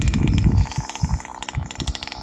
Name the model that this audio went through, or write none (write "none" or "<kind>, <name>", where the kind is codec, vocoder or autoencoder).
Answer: autoencoder, DAC-VAE